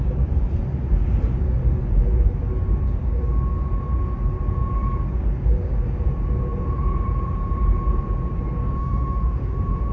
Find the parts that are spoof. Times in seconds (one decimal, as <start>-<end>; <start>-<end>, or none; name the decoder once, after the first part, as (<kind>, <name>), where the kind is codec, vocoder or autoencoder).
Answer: 8.8-9.9 (autoencoder, DAC-VAE)